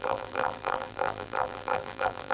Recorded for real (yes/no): no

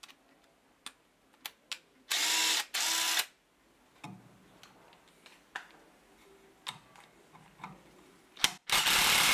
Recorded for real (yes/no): yes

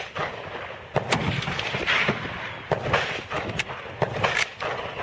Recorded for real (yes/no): yes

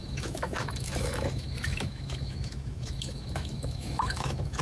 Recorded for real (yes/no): no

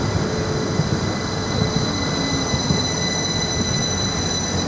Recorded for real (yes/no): yes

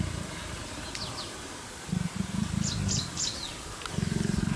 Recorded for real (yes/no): yes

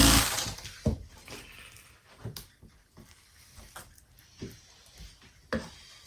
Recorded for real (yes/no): yes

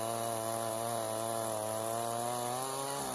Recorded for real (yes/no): yes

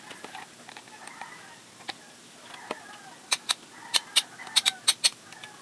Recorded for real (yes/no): no